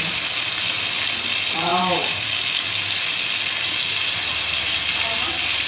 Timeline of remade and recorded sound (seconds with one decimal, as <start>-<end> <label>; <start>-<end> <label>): 0.0-1.7 recorded; 1.7-2.3 remade; 2.3-5.7 recorded

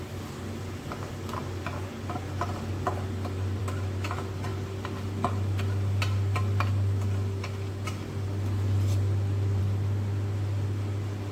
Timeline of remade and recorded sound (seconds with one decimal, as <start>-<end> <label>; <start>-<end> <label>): 0.0-11.3 recorded

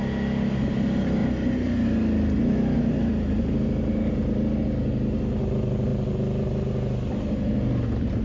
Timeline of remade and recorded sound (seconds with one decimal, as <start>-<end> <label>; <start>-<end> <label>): 0.0-8.2 recorded

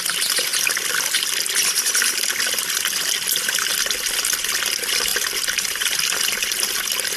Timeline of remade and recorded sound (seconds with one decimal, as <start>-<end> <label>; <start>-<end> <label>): 0.0-5.1 recorded; 5.1-6.2 remade; 6.2-7.2 recorded